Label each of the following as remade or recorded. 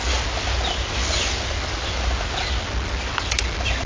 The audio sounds recorded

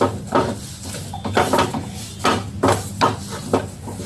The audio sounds recorded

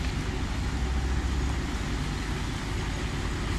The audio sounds recorded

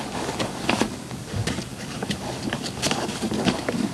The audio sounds remade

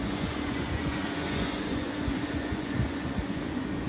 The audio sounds remade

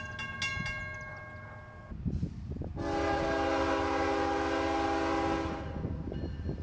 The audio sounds recorded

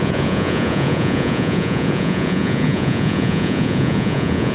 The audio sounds remade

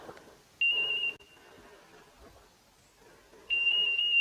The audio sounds recorded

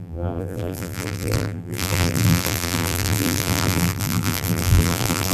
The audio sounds remade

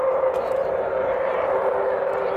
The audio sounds recorded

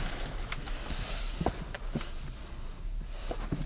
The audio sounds recorded